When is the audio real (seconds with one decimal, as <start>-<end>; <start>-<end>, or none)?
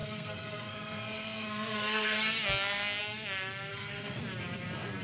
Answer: 3.0-3.7; 4.2-5.0